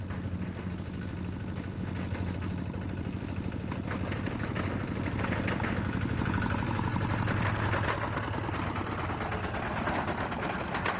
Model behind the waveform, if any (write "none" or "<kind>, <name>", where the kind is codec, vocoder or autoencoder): none